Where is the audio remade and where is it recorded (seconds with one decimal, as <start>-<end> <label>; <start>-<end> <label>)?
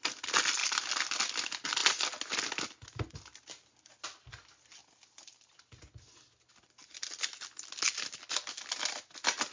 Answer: 0.0-9.5 recorded